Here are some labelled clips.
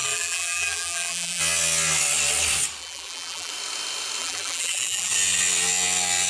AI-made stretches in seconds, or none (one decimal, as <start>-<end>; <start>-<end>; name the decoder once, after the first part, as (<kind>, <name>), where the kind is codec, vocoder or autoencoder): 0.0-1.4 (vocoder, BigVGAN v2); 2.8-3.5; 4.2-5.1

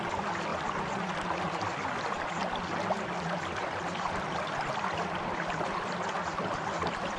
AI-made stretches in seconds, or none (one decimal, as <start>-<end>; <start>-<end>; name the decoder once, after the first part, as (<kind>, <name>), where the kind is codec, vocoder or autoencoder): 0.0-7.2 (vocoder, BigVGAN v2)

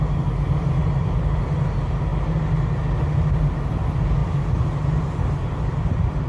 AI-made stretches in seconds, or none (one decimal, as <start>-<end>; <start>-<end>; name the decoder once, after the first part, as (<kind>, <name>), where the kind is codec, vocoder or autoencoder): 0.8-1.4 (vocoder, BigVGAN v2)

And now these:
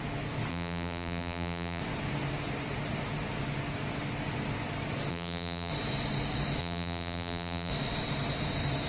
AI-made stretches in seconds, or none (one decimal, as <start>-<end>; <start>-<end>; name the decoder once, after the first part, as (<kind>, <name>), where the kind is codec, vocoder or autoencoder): 0.5-1.8 (vocoder, BigVGAN v2); 5.1-5.7; 6.6-7.7